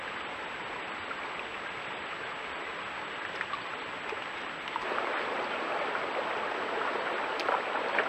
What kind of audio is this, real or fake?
real